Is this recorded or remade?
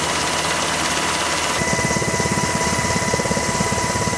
recorded